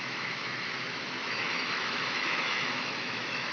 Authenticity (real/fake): fake